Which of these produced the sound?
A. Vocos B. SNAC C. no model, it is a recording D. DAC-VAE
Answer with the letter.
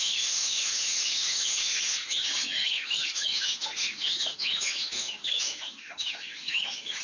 D